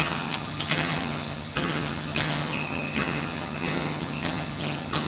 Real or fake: fake